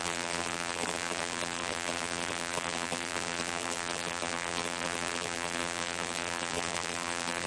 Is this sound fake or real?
fake